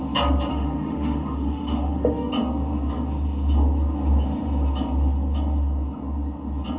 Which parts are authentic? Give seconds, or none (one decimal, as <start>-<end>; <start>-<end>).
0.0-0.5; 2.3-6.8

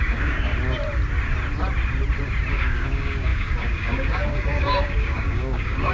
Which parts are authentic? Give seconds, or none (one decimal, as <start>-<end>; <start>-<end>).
0.5-2.5

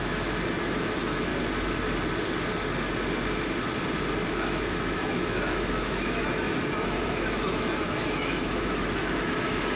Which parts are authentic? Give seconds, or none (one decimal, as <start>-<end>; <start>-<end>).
1.3-4.3

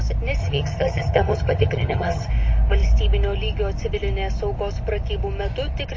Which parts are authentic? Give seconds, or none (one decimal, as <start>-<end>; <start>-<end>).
0.0-0.4; 2.3-6.0

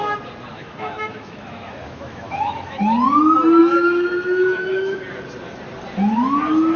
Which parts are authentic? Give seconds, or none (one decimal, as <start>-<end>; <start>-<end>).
0.0-0.5; 2.8-3.6; 5.0-6.8

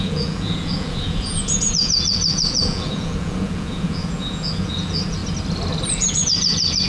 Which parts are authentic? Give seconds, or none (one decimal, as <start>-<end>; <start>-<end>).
5.2-5.9

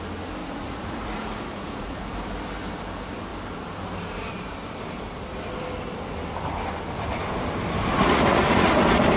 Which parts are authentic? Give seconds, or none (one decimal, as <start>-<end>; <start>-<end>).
0.0-0.4; 2.1-7.9; 8.7-9.2

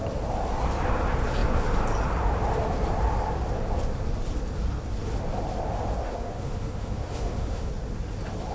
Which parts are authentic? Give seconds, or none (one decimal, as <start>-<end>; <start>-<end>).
0.0-6.0; 7.7-8.5